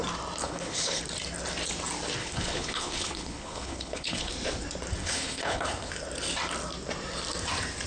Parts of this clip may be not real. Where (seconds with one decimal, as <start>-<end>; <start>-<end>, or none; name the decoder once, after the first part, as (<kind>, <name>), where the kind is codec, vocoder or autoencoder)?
0.4-1.0 (codec, HILCodec); 2.2-4.3; 5.0-5.9